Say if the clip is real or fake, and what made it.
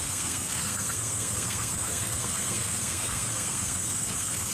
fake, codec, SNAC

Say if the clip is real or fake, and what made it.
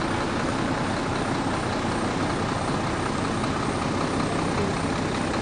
real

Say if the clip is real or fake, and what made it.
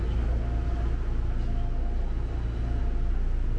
real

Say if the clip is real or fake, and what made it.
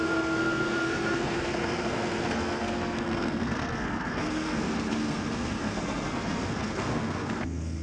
fake, codec, SNAC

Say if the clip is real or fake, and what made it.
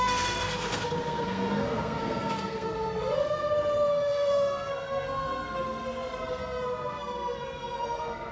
fake, codec, SNAC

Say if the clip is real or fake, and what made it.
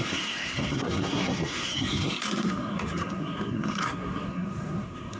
fake, codec, SNAC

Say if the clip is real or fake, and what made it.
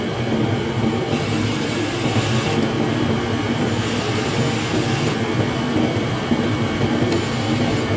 real